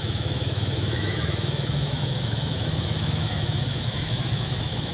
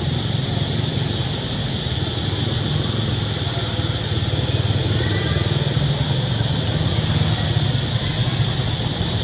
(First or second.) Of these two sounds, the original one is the second